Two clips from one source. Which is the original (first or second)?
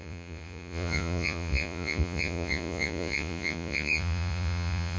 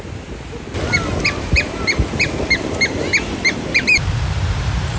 second